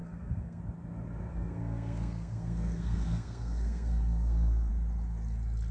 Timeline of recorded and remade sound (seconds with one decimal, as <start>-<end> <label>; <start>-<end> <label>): 0.0-0.6 remade; 0.6-1.3 recorded; 1.3-4.7 remade; 4.7-5.7 recorded